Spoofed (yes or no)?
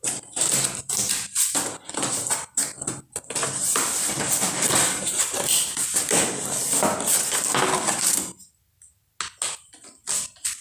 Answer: no